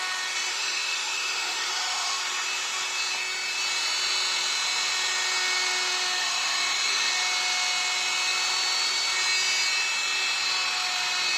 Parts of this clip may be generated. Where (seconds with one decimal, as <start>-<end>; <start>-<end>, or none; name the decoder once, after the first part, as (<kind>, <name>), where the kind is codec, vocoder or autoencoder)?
0.5-2.2 (autoencoder, DAC-VAE); 6.2-7.1